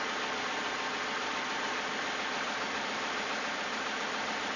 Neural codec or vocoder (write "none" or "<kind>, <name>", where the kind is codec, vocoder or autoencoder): none